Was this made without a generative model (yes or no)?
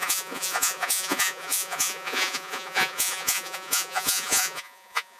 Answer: no